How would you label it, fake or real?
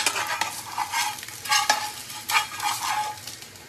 real